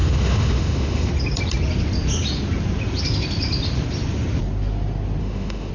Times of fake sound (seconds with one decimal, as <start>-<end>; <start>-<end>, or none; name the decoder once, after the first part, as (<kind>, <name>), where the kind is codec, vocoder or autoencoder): 0.0-1.1 (autoencoder, DAC-VAE); 5.2-5.7